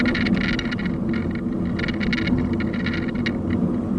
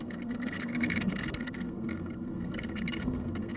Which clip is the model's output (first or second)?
second